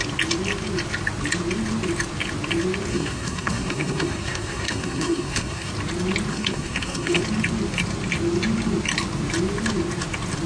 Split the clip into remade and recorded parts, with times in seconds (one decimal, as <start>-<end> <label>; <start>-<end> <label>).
0.0-2.9 recorded; 2.9-5.7 remade; 5.7-6.3 recorded; 6.3-7.2 remade; 7.2-10.5 recorded